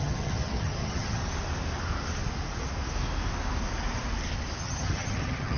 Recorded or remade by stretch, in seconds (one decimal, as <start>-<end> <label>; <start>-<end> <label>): 0.0-1.2 remade; 1.2-4.6 recorded; 4.6-5.6 remade